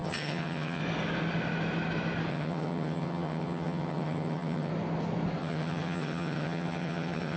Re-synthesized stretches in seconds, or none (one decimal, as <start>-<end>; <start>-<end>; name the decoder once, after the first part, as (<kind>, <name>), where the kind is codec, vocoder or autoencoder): 0.0-0.8 (vocoder, HiFi-GAN); 2.3-4.7; 5.4-7.4